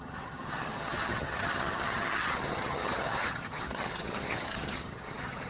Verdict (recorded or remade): remade